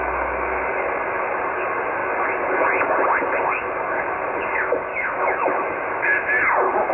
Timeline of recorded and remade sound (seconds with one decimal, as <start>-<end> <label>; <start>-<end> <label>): 0.0-4.9 recorded; 4.9-6.4 remade; 6.4-6.9 recorded